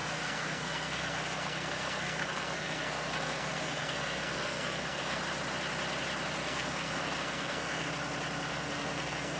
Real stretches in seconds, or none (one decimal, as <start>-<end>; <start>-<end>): 5.2-6.4; 7.9-8.5